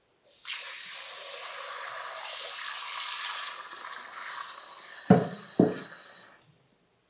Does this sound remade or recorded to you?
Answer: recorded